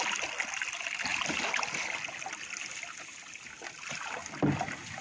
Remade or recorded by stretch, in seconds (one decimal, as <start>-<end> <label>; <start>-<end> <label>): 0.0-1.1 recorded; 1.1-2.3 remade; 2.3-5.0 recorded

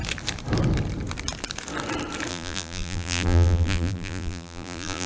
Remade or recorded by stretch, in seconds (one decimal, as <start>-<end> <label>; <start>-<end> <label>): 0.0-2.3 recorded; 2.3-5.1 remade

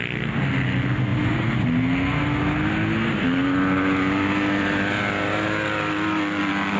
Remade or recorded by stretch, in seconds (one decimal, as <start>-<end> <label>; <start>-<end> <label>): 0.0-1.1 recorded; 1.1-1.6 remade; 1.6-6.8 recorded

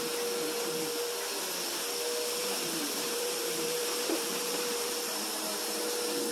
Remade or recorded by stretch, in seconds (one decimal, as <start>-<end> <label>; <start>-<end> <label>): 0.0-2.4 recorded; 2.4-5.8 remade; 5.8-6.3 recorded